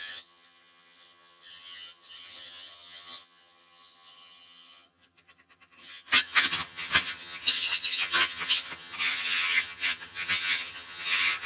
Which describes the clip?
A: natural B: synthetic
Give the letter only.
B